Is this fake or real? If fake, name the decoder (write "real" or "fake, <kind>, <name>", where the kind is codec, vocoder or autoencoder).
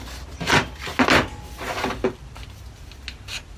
real